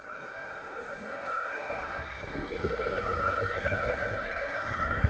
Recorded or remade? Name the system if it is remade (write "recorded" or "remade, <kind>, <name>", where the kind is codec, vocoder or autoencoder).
remade, codec, SNAC